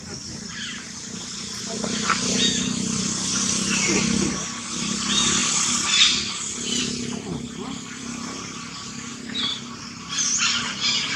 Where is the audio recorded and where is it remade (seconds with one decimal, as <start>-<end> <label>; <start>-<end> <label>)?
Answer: 0.0-5.4 recorded; 5.4-6.8 remade; 6.8-9.1 recorded; 9.1-9.8 remade; 9.8-11.2 recorded